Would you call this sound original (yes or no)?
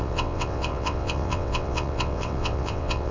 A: no